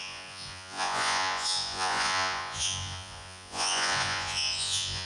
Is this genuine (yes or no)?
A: no